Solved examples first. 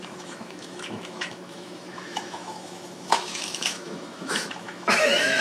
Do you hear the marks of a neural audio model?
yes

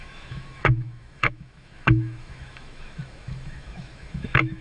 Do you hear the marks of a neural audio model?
yes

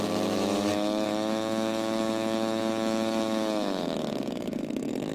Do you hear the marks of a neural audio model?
yes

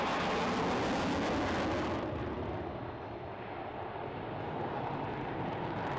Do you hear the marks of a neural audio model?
no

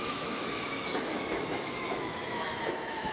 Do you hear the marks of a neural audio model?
yes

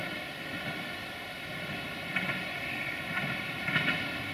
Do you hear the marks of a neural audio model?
no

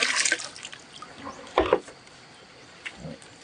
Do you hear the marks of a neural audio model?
no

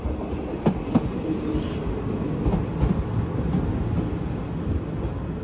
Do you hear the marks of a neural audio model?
no